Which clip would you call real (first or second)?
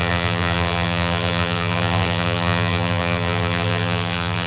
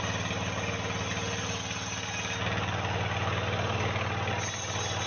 second